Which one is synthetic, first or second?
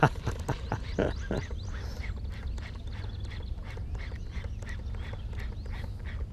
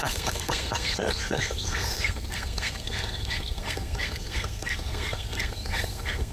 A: second